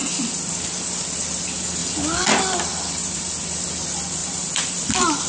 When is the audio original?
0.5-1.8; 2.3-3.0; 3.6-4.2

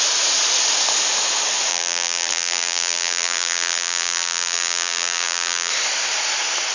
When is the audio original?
0.0-1.7; 5.7-6.7

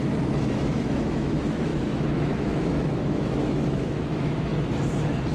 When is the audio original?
4.5-5.3

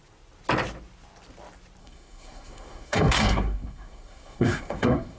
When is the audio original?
0.0-1.8

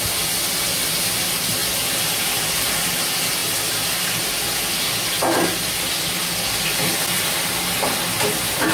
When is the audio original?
0.0-8.7